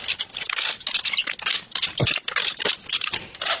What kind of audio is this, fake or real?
real